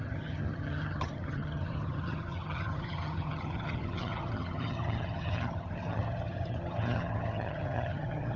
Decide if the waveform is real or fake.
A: fake